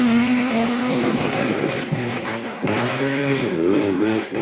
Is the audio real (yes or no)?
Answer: no